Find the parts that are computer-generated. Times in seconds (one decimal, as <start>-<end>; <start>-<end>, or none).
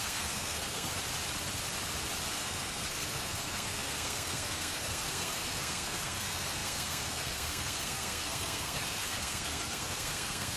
0.0-0.9; 2.3-10.6